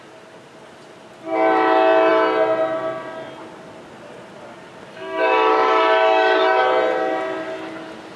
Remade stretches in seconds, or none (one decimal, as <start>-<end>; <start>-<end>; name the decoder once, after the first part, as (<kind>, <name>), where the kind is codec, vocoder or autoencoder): 4.9-6.6 (codec, DAC)